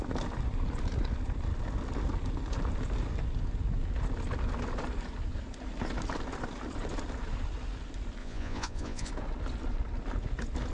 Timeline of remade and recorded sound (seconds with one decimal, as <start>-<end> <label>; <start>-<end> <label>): 0.0-8.2 recorded; 8.2-9.1 remade; 9.1-10.7 recorded